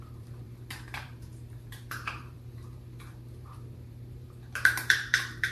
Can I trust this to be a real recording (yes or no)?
no